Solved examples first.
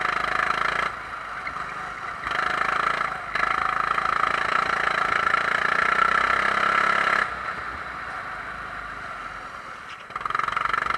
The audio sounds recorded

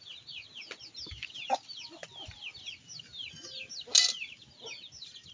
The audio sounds recorded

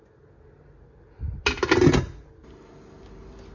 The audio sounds recorded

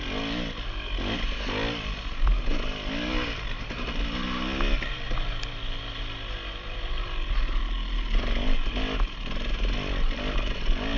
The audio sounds recorded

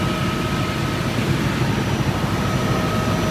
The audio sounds recorded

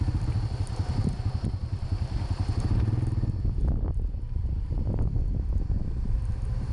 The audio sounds remade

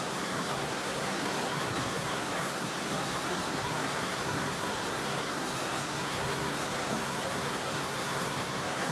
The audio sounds remade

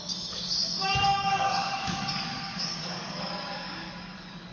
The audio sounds remade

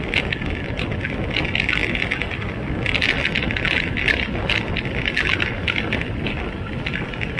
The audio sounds recorded